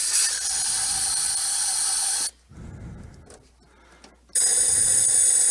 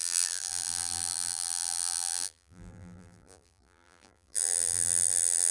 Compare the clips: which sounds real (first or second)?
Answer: first